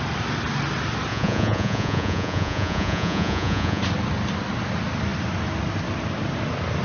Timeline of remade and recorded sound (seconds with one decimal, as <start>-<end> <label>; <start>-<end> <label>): 0.0-1.1 recorded; 1.1-3.8 remade; 3.8-6.8 recorded